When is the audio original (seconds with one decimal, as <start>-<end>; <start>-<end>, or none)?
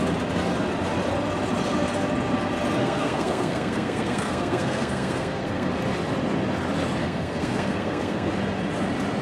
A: 0.0-2.8; 5.7-7.0; 8.3-9.2